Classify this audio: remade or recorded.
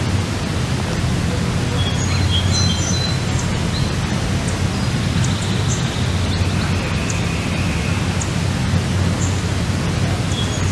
recorded